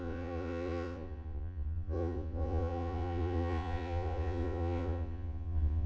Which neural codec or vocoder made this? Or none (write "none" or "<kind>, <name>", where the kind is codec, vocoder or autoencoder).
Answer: vocoder, Vocos